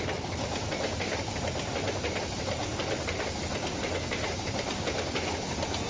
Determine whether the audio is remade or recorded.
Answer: recorded